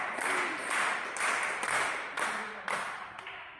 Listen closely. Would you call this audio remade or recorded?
recorded